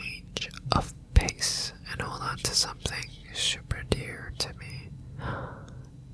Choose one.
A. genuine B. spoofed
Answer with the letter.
B